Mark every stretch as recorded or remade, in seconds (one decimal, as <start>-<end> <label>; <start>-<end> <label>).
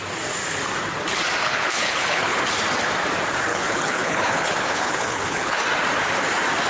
0.0-1.4 recorded; 1.4-2.4 remade; 2.4-3.5 recorded; 3.5-5.6 remade; 5.6-6.7 recorded